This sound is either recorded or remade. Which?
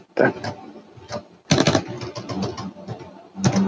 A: recorded